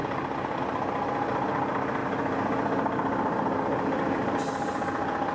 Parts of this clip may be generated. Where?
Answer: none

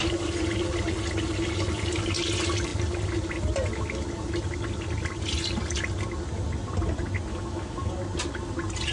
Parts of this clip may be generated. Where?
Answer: 7.3-7.9 (autoencoder, DAC-VAE)